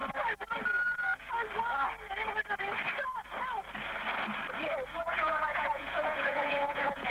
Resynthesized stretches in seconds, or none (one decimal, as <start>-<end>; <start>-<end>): 5.0-7.1